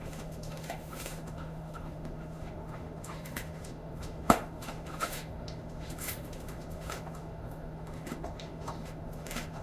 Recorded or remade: remade